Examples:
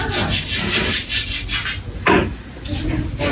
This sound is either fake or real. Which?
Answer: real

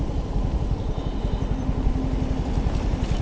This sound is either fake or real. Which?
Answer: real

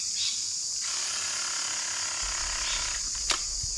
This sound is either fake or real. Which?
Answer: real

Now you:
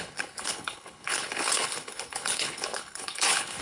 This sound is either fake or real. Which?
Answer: fake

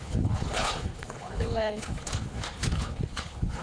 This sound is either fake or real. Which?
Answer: fake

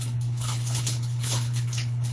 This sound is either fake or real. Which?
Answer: fake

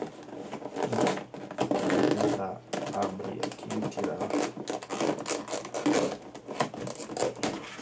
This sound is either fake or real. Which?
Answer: real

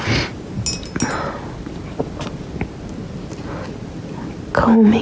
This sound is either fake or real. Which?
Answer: real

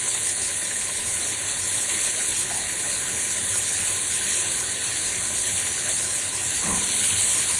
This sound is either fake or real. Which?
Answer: fake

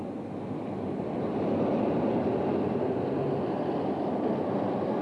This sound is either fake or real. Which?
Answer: real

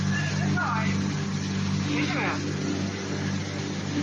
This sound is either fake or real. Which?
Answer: real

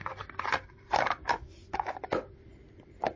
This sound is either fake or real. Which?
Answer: real